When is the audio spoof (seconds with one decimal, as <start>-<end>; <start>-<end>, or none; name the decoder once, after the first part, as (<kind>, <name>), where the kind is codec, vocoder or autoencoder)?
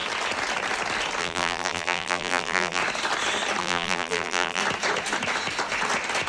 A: 1.2-2.8 (vocoder, BigVGAN v2); 3.6-4.6